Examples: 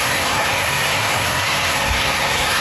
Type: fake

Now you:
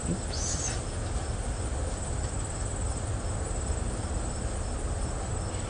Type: real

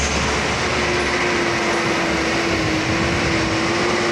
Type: real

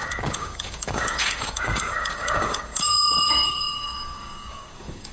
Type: fake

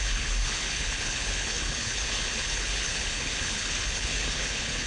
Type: fake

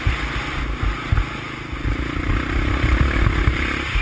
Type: real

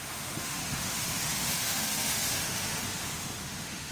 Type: fake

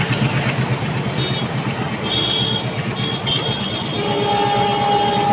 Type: real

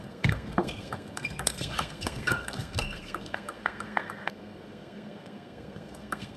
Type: fake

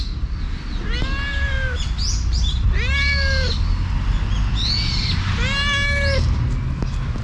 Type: real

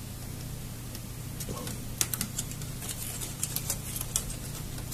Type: real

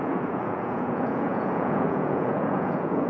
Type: fake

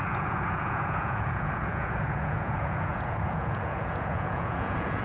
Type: fake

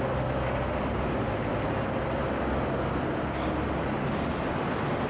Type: real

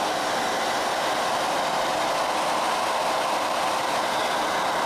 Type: real